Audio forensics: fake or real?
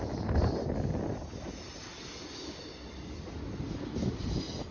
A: real